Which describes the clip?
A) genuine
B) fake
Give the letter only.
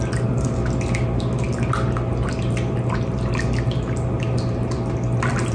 A